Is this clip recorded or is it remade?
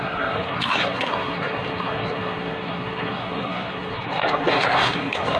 remade